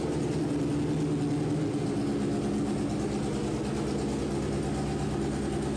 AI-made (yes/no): no